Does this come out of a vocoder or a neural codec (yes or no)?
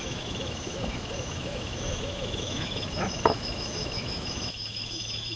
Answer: yes